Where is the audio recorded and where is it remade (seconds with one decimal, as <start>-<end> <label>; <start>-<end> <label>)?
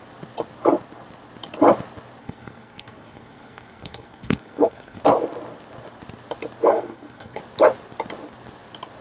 0.0-2.2 recorded; 2.2-5.0 remade; 5.0-6.7 recorded; 6.7-7.4 remade; 7.4-9.0 recorded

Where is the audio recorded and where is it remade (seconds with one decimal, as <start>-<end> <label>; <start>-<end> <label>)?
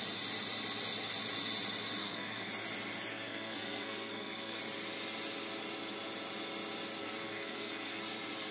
0.0-2.0 recorded; 2.0-2.5 remade; 2.5-3.1 recorded; 3.1-4.6 remade; 4.6-7.0 recorded; 7.0-8.0 remade; 8.0-8.5 recorded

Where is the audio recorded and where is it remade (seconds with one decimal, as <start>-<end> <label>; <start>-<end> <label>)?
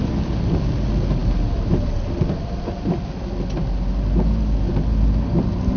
0.0-5.8 recorded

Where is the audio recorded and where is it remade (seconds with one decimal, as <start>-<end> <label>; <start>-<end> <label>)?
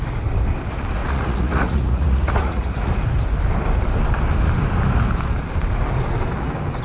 0.0-1.0 recorded; 1.0-2.9 remade; 2.9-6.8 recorded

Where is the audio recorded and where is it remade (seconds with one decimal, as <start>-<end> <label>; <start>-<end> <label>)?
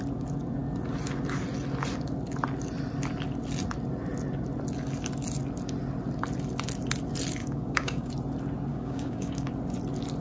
0.0-7.4 recorded; 7.4-8.1 remade; 8.1-8.7 recorded; 8.7-9.5 remade; 9.5-10.2 recorded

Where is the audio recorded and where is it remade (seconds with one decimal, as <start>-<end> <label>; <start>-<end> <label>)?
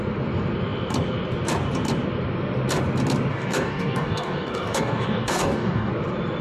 0.0-3.3 recorded; 3.3-5.9 remade; 5.9-6.4 recorded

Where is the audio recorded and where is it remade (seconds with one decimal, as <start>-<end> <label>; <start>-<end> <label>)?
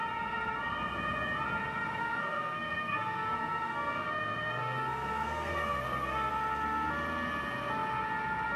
0.0-2.0 recorded; 2.0-6.3 remade; 6.3-8.6 recorded